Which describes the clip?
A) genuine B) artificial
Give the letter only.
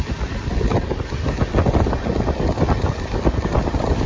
A